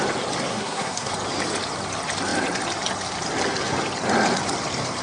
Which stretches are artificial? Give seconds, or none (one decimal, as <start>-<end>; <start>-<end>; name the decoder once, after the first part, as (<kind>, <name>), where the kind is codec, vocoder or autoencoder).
0.5-1.1 (codec, SNAC)

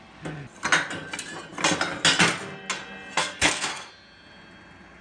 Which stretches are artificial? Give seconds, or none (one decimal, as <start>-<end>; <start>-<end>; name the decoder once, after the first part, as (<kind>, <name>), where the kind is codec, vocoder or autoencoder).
3.2-3.9 (codec, SNAC)

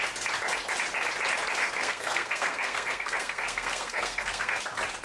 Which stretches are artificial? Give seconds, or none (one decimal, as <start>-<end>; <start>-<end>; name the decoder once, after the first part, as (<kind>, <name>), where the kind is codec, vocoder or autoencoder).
1.6-4.6 (codec, SNAC)

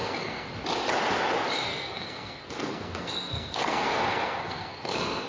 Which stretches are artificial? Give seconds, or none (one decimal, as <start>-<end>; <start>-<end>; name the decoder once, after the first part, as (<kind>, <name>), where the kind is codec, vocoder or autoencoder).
0.0-0.5 (codec, SNAC); 1.7-5.3

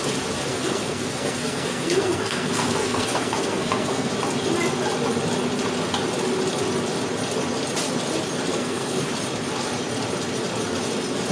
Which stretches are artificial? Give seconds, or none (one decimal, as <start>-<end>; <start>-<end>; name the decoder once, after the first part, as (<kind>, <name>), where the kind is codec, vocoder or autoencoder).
0.5-4.1 (codec, SNAC); 8.5-9.0

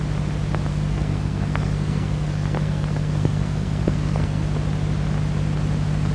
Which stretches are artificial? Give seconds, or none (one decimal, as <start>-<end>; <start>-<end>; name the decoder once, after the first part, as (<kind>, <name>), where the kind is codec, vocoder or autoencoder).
0.7-4.4 (codec, SNAC)